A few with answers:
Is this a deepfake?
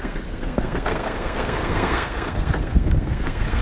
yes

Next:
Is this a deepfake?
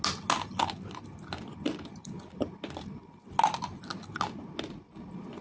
no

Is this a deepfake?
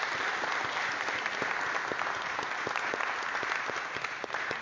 no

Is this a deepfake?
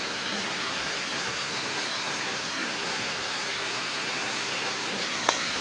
yes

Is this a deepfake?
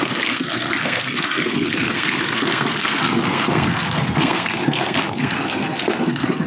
yes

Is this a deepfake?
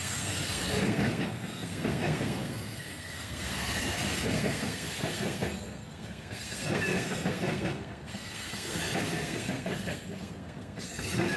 yes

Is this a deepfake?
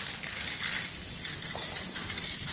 no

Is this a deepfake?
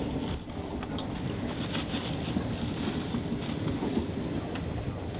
no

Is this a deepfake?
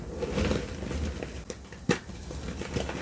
no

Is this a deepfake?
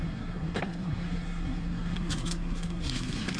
yes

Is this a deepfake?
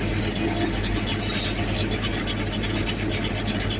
no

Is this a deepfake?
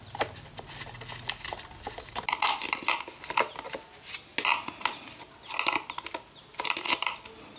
no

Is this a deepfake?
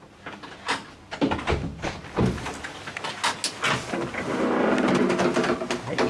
no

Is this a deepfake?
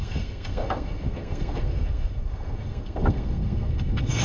yes